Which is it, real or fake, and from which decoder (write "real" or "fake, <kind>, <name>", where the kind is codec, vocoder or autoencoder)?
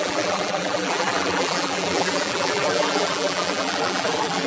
fake, vocoder, BigVGAN v2